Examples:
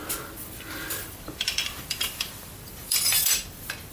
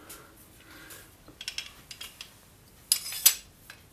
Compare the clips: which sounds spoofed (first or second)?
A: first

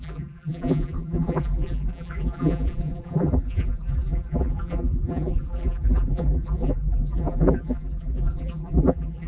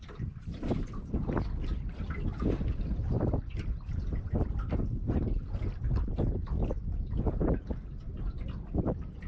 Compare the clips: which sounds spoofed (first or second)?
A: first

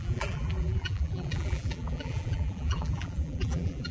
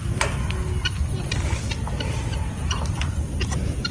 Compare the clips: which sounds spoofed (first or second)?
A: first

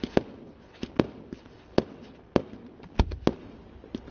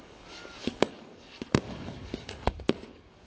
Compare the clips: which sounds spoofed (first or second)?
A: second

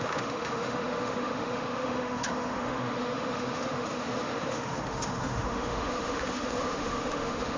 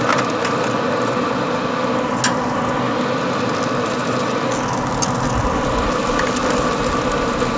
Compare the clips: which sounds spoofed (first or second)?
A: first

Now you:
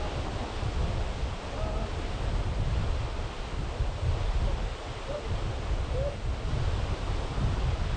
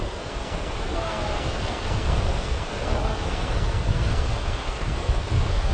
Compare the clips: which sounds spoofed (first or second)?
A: second